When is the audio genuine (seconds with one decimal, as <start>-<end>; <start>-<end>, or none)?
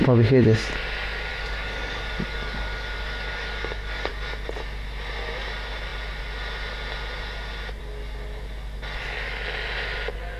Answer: 0.0-1.3; 4.1-10.4